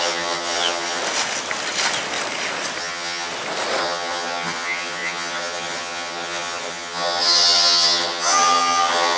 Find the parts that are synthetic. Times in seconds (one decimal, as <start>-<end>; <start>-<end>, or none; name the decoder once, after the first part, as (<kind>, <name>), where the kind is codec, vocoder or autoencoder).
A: 0.0-1.0 (vocoder, HiFi-GAN); 2.8-3.3; 3.8-9.2